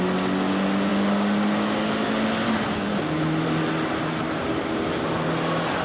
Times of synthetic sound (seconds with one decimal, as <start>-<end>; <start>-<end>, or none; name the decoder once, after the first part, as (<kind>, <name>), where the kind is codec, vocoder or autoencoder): none

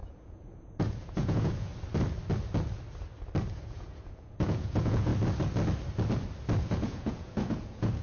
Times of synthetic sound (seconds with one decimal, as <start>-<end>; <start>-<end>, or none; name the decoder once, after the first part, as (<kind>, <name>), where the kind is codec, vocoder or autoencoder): 0.0-1.7 (vocoder, Vocos); 3.5-5.1; 6.6-8.0

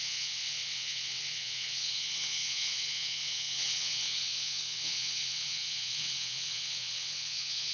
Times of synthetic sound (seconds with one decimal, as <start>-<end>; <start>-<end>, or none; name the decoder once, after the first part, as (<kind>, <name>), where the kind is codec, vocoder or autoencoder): 0.0-7.7 (vocoder, WaveNeXt)

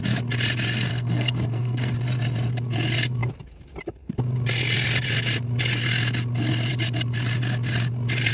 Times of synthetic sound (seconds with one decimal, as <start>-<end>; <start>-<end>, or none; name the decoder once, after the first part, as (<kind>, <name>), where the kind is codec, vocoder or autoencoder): 0.9-1.9 (codec, SNAC)

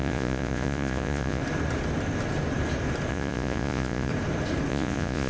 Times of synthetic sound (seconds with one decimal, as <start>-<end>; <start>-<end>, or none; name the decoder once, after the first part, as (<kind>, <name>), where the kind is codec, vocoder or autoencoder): 0.0-1.4 (vocoder, Vocos); 3.1-4.1; 4.7-5.3

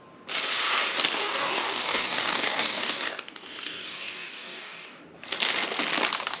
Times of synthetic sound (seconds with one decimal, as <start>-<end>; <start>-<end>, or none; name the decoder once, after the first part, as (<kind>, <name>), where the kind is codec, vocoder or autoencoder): 1.2-5.0 (codec, DAC)

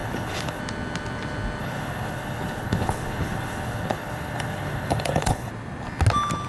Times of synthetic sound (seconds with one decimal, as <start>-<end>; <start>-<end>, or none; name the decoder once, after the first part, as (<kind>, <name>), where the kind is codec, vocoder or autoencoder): 0.0-0.6 (codec, HILCodec); 1.6-5.5